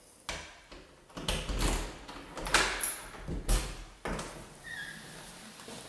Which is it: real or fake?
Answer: real